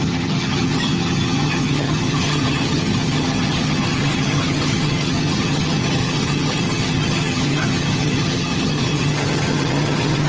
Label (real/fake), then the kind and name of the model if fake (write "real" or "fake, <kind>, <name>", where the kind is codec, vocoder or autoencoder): fake, vocoder, HiFi-GAN